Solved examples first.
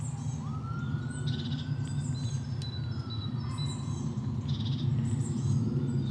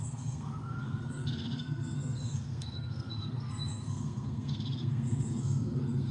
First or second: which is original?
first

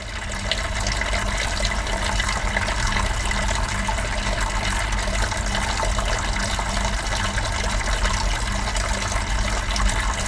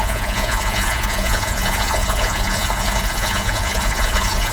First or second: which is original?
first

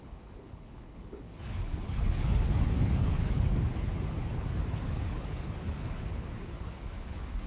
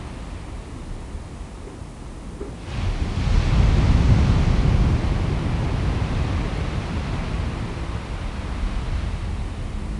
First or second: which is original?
second